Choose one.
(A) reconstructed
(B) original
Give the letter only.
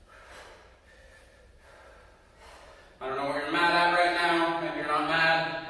B